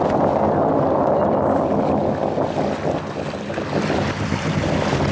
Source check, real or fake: real